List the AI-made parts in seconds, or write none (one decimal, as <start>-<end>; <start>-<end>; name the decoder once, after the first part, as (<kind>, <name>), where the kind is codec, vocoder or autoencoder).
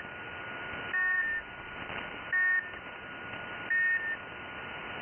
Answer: none